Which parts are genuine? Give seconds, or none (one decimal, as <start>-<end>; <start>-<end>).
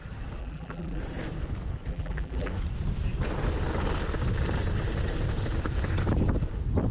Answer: 0.0-0.4; 1.0-1.9; 2.5-6.9